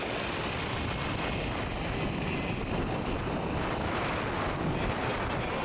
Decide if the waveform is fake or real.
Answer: real